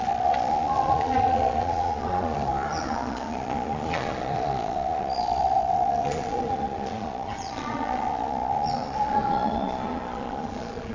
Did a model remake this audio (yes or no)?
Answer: yes